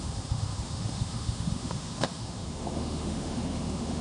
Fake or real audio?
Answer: fake